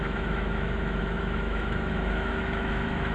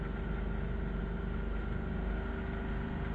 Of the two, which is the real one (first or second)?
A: second